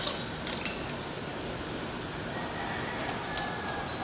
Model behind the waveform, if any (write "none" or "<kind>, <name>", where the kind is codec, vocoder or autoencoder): none